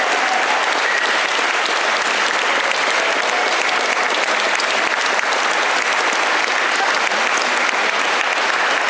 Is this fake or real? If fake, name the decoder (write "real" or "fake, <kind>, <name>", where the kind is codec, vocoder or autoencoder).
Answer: real